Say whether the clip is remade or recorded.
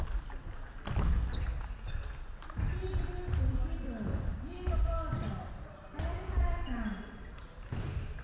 recorded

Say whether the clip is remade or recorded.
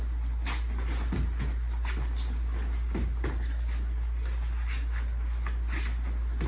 recorded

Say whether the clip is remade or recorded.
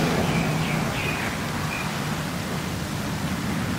recorded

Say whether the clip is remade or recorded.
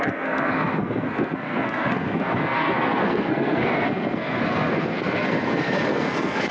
remade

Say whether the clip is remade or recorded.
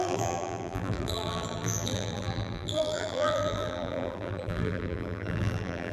remade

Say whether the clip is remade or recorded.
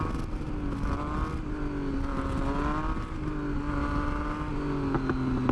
recorded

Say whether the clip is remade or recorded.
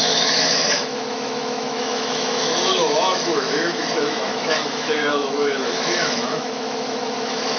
remade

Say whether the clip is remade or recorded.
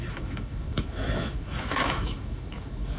remade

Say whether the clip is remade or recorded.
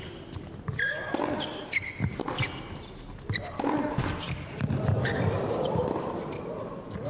recorded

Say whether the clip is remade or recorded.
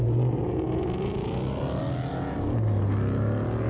recorded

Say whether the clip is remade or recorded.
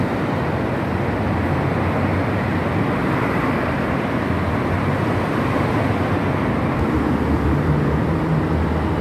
remade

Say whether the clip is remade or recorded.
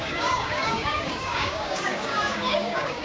remade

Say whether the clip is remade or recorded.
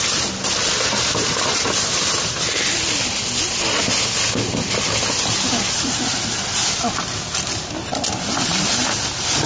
recorded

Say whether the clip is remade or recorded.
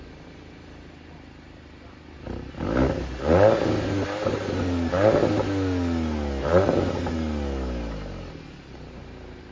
recorded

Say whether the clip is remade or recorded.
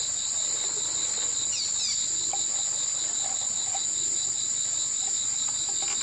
recorded